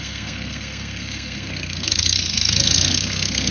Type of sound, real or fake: fake